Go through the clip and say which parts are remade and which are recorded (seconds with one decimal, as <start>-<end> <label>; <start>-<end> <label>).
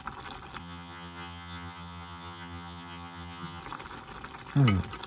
0.0-0.6 recorded; 0.6-3.6 remade; 3.6-5.1 recorded